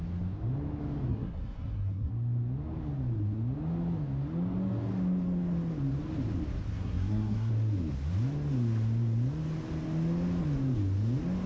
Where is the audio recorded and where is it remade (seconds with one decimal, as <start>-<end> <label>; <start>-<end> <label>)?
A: 0.0-1.1 recorded; 1.1-2.1 remade; 2.1-6.7 recorded; 6.7-7.5 remade; 7.5-11.5 recorded